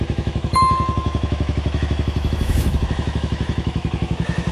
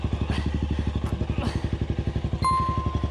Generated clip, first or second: first